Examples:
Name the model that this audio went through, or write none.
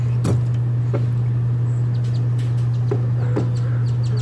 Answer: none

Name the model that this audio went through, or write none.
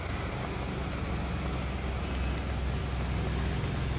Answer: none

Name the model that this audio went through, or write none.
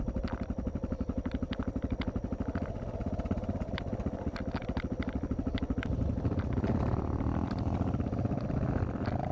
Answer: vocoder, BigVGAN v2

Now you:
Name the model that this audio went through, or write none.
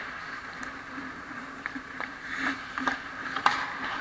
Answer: vocoder, BigVGAN v2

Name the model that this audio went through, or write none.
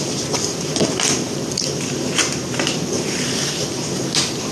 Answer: none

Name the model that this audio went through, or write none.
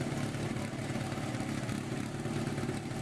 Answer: vocoder, BigVGAN v2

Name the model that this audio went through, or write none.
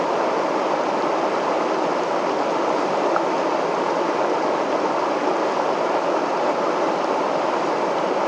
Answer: vocoder, BigVGAN v2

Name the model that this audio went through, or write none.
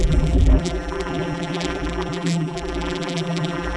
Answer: vocoder, BigVGAN v2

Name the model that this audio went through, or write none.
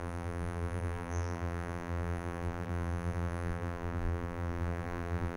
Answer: vocoder, BigVGAN v2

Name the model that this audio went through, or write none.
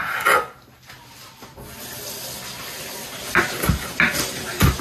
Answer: none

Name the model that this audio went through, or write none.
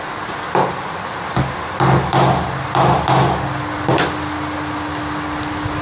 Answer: none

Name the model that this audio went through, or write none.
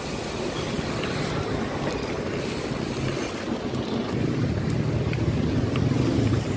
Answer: none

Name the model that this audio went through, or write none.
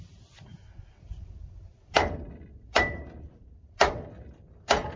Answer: vocoder, BigVGAN v2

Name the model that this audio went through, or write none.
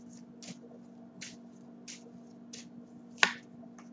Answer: none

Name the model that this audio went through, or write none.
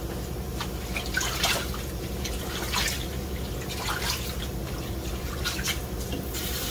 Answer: none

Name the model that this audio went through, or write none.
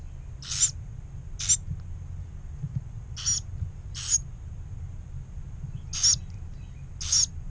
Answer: none